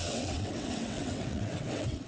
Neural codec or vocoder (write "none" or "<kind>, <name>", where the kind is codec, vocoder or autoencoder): vocoder, WaveNeXt